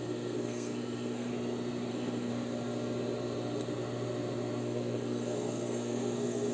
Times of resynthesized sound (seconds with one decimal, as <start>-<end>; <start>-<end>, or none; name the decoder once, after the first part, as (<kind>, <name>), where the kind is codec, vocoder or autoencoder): 0.0-1.3 (codec, SNAC); 1.9-2.3; 4.6-6.5